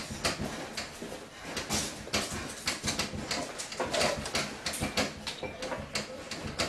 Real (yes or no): yes